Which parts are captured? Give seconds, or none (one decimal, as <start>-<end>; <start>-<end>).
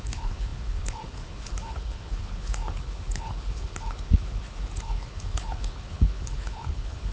none